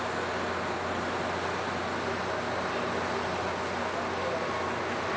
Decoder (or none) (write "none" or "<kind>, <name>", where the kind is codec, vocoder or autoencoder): none